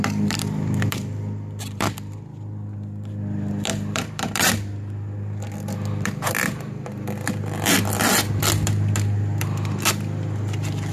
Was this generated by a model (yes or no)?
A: yes